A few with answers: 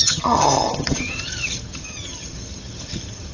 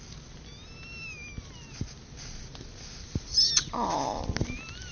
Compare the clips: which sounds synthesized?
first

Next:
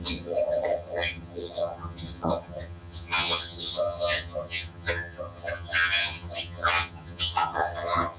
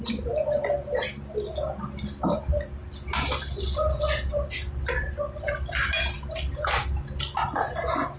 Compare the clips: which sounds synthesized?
first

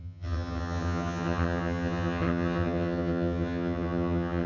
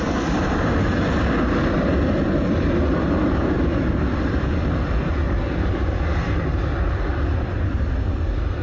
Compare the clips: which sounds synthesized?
first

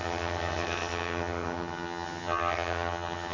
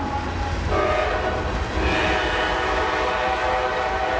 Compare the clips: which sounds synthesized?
first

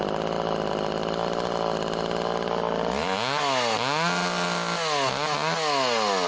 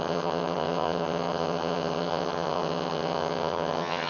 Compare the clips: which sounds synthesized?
second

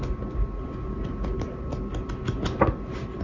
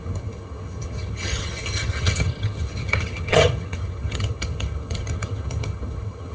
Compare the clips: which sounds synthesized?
second